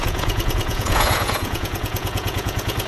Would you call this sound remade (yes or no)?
yes